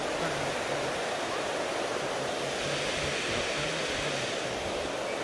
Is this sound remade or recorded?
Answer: recorded